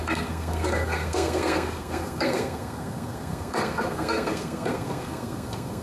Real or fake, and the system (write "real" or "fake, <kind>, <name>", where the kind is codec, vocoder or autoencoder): fake, codec, SNAC